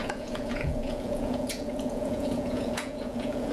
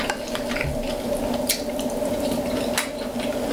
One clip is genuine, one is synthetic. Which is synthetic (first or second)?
first